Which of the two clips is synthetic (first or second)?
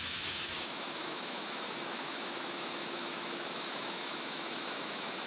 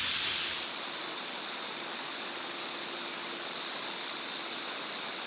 first